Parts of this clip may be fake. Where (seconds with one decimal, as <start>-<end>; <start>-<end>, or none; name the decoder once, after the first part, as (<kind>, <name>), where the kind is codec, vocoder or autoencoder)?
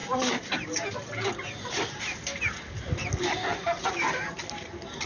none